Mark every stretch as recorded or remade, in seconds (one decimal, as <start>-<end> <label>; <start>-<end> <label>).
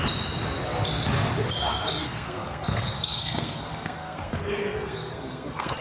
0.0-2.0 recorded; 2.0-5.8 remade